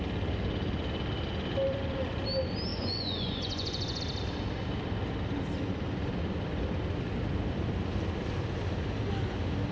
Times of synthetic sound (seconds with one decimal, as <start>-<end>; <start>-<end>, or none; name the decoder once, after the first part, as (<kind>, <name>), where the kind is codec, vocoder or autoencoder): 2.7-4.0 (vocoder, Vocos)